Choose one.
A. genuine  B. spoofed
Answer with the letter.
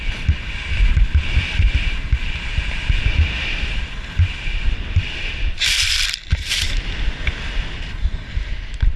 A